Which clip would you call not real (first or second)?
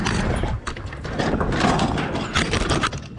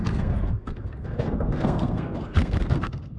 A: second